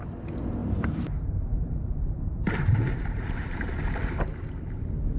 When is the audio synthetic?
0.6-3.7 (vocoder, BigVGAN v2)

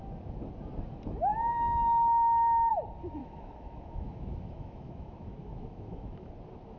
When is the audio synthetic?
3.2-6.3 (autoencoder, DAC-VAE)